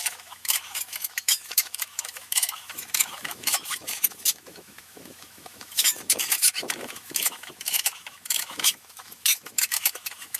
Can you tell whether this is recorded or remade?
remade